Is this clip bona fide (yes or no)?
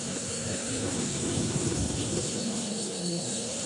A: no